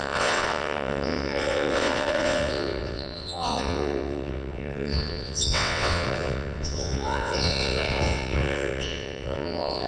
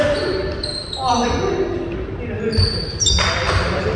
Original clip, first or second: second